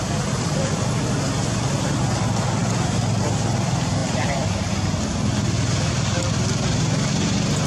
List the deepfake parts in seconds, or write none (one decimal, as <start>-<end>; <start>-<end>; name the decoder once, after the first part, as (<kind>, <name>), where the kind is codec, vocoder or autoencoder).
none